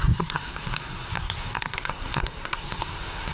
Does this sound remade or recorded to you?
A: remade